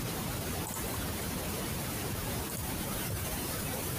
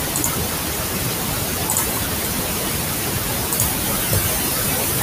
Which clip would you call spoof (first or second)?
first